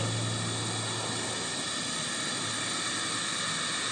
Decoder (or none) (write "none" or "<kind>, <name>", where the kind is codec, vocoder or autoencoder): none